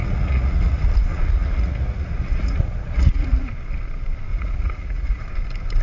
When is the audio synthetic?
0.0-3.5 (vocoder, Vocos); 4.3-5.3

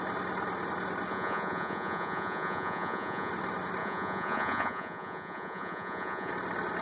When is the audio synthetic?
1.1-3.3 (vocoder, Vocos); 3.8-6.3

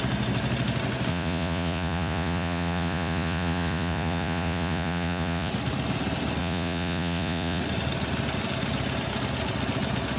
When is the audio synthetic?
1.1-5.5 (vocoder, Vocos); 6.4-7.6

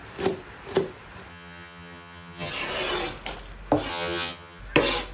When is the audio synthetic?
1.3-2.5 (vocoder, HiFi-GAN); 3.9-4.6